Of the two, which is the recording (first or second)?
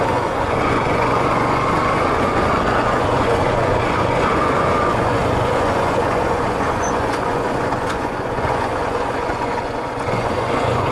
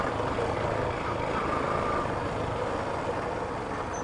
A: second